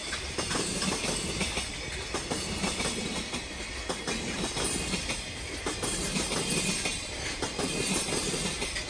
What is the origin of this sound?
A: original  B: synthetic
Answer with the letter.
A